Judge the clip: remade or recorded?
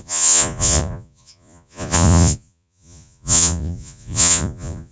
remade